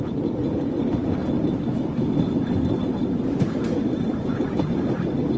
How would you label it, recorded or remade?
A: recorded